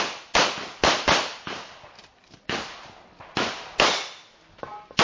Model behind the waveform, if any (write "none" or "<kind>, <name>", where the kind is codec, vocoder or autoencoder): none